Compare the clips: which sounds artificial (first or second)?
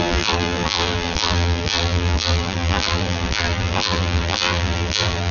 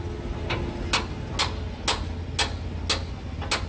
first